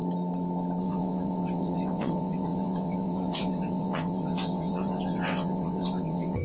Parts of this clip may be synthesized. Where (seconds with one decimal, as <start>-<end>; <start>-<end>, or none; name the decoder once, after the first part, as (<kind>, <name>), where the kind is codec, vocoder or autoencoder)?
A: 0.8-6.4 (vocoder, WaveNeXt)